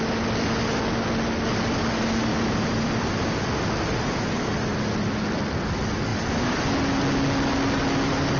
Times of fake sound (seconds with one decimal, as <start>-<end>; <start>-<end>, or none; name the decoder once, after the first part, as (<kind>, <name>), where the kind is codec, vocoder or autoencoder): 2.3-3.4 (vocoder, BigVGAN v2); 6.1-6.7